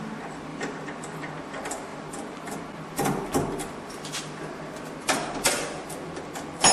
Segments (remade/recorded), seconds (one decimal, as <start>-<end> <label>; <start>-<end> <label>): 0.0-0.5 recorded; 0.5-1.3 remade; 1.3-1.9 recorded; 1.9-2.6 remade; 2.6-6.7 recorded

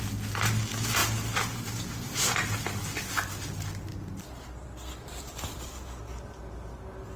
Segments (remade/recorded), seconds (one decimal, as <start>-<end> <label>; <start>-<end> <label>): 0.0-4.6 recorded; 4.6-6.0 remade; 6.0-7.2 recorded

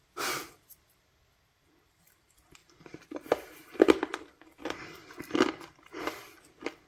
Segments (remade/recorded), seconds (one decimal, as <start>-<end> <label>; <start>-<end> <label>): 0.0-2.6 recorded; 2.6-6.9 remade

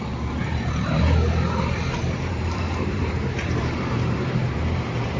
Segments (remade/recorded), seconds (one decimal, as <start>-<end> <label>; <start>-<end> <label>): 0.0-0.4 recorded; 0.4-1.0 remade; 1.0-2.0 recorded; 2.0-5.2 remade

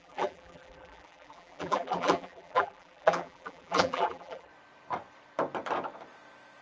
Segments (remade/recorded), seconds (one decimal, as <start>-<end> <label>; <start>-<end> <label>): 0.0-4.5 remade; 4.5-6.6 recorded

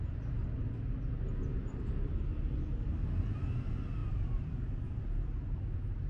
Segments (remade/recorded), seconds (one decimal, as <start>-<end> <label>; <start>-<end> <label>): 0.0-1.5 recorded; 1.5-2.2 remade; 2.2-4.0 recorded; 4.0-5.0 remade; 5.0-6.1 recorded